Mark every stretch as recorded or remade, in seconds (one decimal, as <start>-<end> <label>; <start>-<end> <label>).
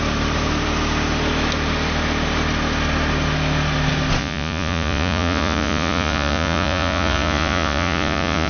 0.0-4.2 recorded; 4.2-8.5 remade